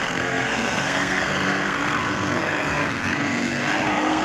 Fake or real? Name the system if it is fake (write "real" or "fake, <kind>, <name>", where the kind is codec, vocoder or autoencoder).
fake, codec, SNAC